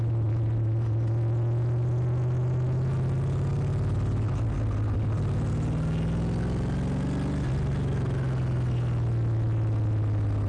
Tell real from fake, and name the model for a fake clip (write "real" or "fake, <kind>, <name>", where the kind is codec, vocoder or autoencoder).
real